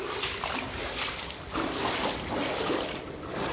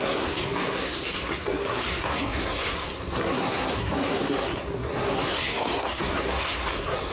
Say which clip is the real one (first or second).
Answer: first